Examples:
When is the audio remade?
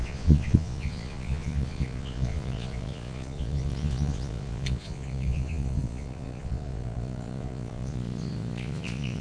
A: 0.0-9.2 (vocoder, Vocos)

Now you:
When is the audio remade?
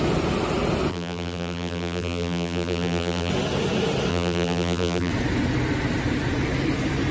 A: 0.9-3.3 (vocoder, BigVGAN v2); 4.1-5.1